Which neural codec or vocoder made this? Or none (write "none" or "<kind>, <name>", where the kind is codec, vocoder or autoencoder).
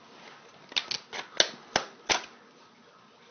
none